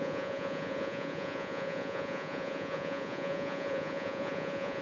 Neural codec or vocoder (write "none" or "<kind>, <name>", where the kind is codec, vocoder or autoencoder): vocoder, Vocos